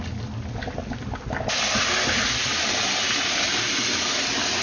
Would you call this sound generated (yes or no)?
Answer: no